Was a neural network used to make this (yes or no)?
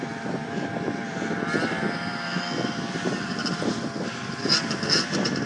yes